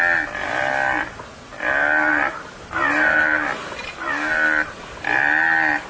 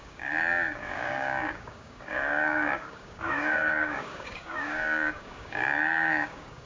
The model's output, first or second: second